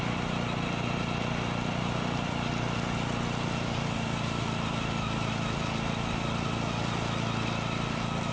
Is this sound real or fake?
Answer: real